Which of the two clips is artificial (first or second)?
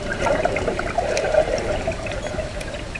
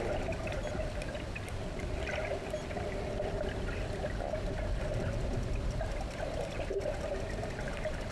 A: first